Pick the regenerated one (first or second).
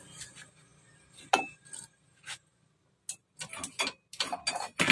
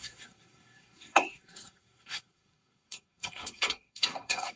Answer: second